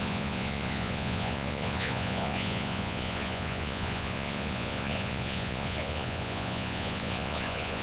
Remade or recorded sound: remade